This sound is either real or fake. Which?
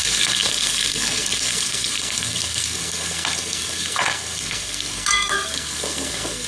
fake